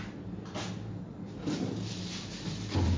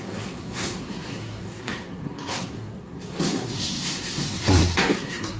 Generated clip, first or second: second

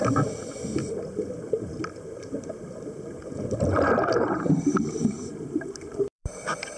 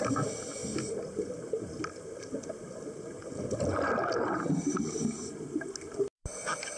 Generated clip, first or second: first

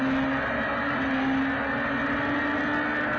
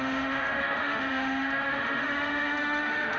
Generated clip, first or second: second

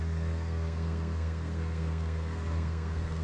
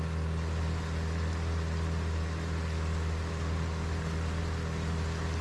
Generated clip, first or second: first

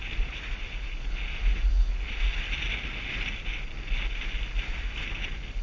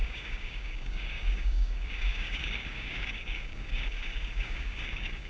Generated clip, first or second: second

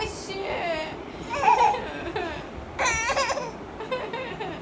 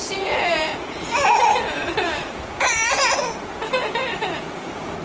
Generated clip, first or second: second